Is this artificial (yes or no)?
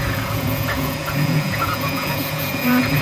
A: yes